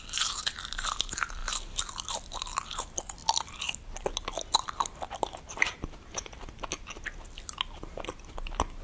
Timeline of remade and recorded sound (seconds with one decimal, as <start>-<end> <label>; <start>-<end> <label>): 0.0-1.4 remade; 1.4-2.1 recorded; 2.1-3.2 remade; 3.2-7.8 recorded; 7.8-8.8 remade